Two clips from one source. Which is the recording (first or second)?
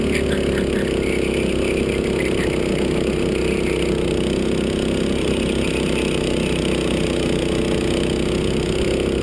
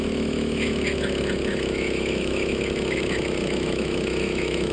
first